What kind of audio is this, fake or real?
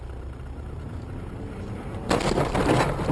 real